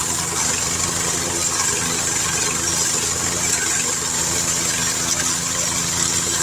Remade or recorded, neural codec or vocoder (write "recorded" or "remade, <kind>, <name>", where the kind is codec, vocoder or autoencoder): recorded